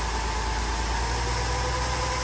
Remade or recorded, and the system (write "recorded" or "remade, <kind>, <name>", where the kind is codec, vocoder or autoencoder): recorded